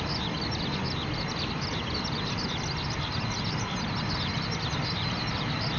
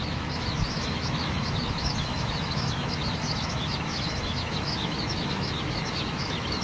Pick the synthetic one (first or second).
second